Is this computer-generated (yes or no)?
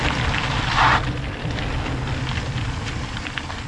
yes